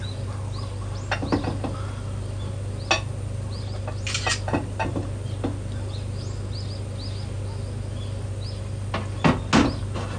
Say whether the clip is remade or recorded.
recorded